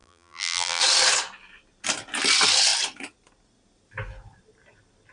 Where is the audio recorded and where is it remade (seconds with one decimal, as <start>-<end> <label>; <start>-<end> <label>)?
0.0-0.8 remade; 0.8-5.1 recorded